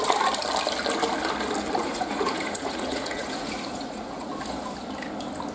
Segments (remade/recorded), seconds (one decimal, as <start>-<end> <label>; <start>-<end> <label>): 0.0-1.8 recorded; 1.8-4.3 remade; 4.3-5.5 recorded